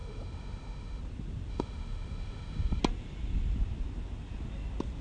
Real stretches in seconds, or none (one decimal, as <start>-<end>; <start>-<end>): 1.0-1.5; 2.8-5.0